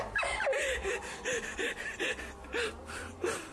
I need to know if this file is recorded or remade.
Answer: recorded